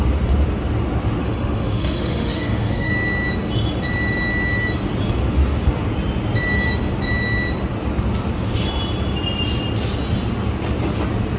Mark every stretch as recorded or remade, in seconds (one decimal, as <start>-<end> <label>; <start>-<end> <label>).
0.0-1.2 recorded; 1.2-2.9 remade; 2.9-11.4 recorded